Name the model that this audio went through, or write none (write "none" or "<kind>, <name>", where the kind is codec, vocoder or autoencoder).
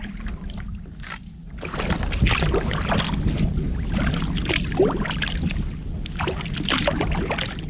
none